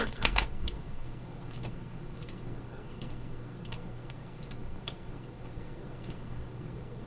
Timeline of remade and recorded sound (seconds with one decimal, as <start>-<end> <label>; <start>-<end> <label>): 0.0-7.1 remade